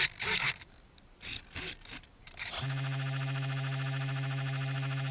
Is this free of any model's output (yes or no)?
yes